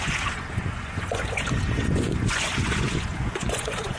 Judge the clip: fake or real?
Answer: fake